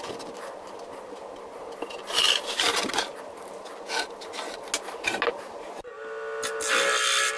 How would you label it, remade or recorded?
recorded